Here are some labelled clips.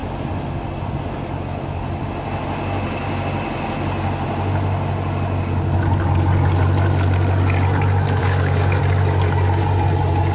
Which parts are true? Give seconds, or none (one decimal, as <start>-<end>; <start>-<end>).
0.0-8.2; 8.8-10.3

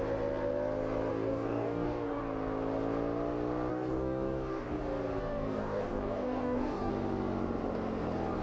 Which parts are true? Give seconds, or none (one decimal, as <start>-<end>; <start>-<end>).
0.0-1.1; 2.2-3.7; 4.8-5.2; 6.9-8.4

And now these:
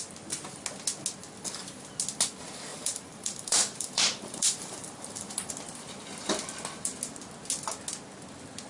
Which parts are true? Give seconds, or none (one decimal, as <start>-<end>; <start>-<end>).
0.0-2.7; 5.5-8.7